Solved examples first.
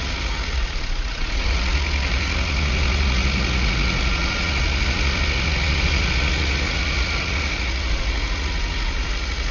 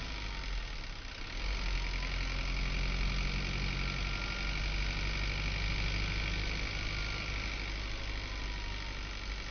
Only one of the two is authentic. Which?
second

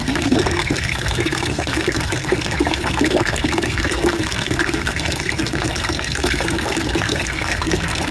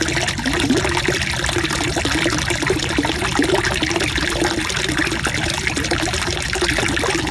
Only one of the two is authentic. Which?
second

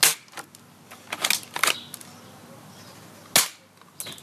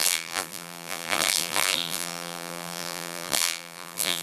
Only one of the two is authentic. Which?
first